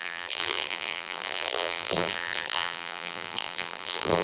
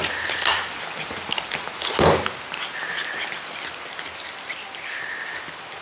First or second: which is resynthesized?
first